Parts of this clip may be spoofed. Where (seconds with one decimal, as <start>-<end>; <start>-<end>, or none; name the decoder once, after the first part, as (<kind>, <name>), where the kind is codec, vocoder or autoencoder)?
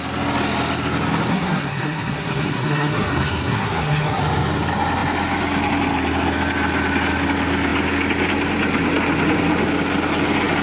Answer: 1.3-4.2 (codec, SNAC)